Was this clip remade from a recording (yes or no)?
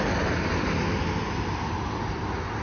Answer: no